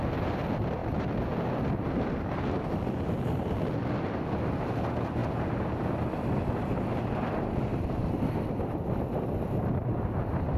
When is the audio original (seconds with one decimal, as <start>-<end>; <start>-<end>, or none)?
0.0-7.7; 8.2-10.6